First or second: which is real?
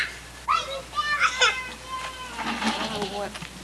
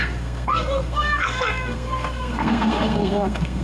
first